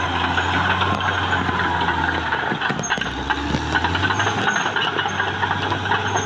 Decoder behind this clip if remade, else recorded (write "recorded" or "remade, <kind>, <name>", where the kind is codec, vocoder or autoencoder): recorded